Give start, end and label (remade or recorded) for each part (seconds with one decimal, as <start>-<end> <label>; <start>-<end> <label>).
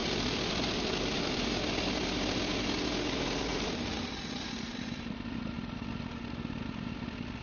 0.0-1.7 remade; 1.7-3.5 recorded; 3.5-5.9 remade; 5.9-7.4 recorded